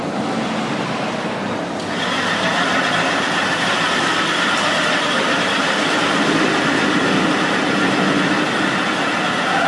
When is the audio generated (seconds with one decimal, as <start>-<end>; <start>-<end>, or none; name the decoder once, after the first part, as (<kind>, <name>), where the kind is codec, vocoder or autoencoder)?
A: 2.5-6.1 (vocoder, BigVGAN v2)